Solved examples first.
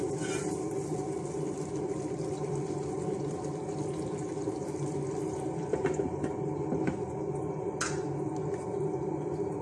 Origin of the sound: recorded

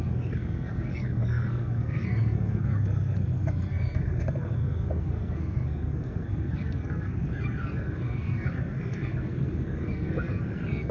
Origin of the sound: remade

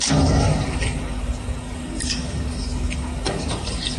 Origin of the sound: remade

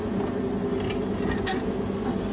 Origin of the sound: recorded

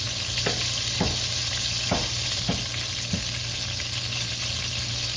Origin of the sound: recorded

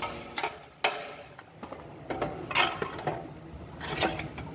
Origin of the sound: recorded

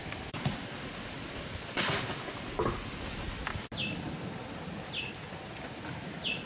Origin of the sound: recorded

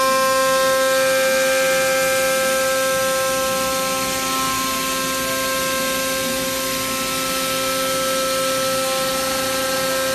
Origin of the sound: recorded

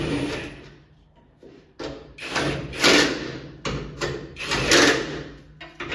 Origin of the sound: recorded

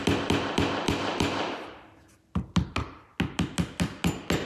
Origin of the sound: recorded